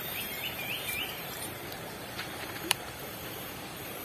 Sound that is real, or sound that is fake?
fake